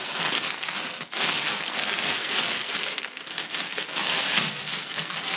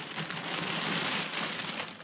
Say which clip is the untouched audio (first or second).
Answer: second